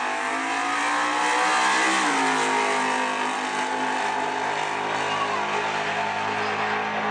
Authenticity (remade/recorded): recorded